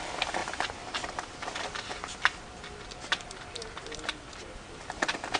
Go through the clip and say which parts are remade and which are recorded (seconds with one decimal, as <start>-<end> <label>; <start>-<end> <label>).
0.0-5.4 recorded